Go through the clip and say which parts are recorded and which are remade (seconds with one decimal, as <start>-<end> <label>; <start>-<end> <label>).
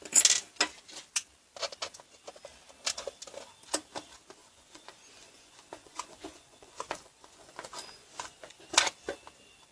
0.0-4.4 recorded; 4.4-8.6 remade; 8.6-9.7 recorded